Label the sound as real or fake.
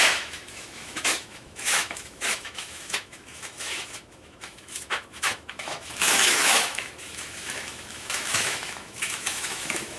fake